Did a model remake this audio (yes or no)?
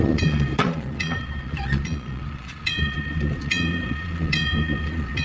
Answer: yes